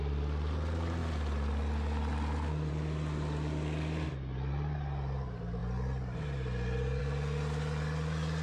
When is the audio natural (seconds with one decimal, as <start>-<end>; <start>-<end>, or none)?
0.0-8.4